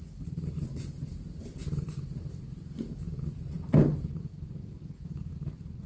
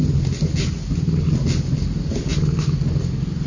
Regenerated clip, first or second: first